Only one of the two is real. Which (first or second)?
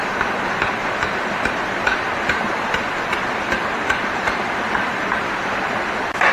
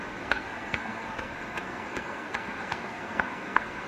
first